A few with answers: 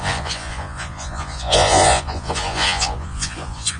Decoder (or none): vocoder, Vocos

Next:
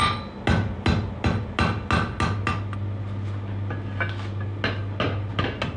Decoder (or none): none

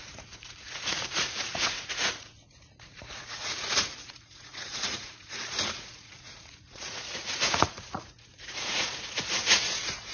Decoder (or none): vocoder, Vocos